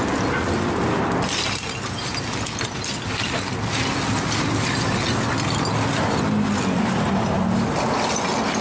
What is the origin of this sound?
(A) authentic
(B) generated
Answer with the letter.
A